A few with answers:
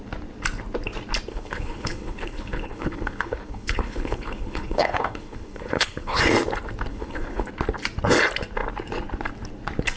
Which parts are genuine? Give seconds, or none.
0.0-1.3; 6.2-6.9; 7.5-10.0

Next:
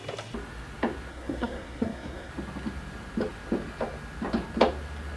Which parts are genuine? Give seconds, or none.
0.0-1.1; 2.3-5.2

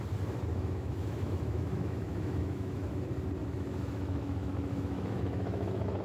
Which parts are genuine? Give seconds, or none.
0.0-0.5; 3.0-3.4

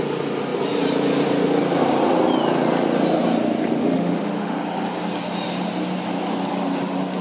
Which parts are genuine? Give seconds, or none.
0.0-3.8; 4.6-7.2

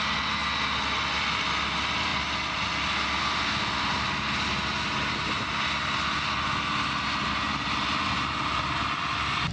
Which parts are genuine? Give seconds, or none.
0.0-9.5

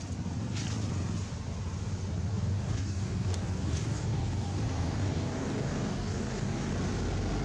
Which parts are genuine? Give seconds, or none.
0.0-2.3; 6.7-7.4